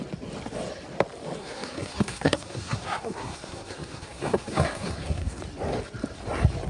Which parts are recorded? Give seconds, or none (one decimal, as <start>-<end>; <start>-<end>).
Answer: 0.0-1.4; 5.4-6.7